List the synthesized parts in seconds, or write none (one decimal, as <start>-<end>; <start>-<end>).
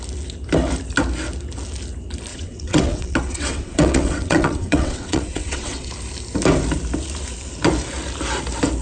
2.3-5.9